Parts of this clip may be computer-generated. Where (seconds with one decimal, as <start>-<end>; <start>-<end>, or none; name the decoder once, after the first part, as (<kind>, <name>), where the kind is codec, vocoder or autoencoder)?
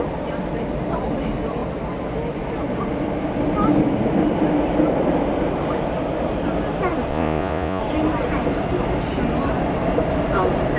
7.1-7.8 (vocoder, Vocos)